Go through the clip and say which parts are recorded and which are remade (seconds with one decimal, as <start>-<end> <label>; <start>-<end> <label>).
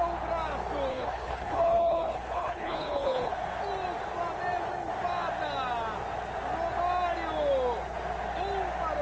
0.0-0.9 recorded; 0.9-3.3 remade; 3.3-9.0 recorded